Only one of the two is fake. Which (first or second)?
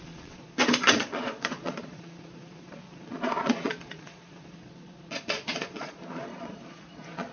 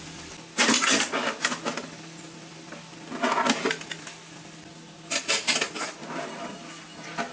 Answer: first